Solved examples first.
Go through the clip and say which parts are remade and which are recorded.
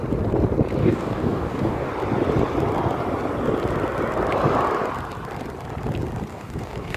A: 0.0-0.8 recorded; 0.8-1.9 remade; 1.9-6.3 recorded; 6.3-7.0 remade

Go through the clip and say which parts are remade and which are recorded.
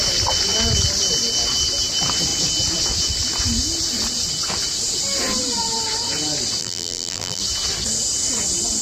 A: 0.0-6.6 recorded; 6.6-7.4 remade; 7.4-8.8 recorded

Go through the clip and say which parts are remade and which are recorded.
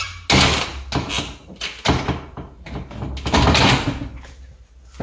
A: 0.0-5.0 recorded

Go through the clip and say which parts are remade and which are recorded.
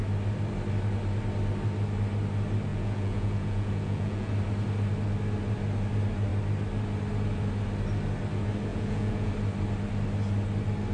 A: 0.0-2.7 recorded; 2.7-4.3 remade; 4.3-8.7 recorded; 8.7-9.3 remade; 9.3-10.9 recorded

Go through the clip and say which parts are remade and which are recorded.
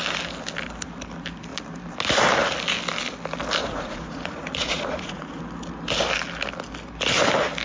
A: 0.0-3.6 recorded; 3.6-5.4 remade; 5.4-7.6 recorded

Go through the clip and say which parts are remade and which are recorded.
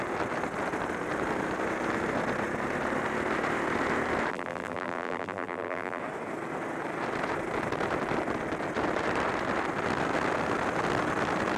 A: 0.0-4.3 recorded; 4.3-6.0 remade; 6.0-11.6 recorded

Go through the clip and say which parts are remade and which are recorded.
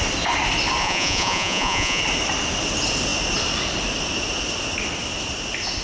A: 0.0-0.8 recorded; 0.8-2.0 remade; 2.0-5.8 recorded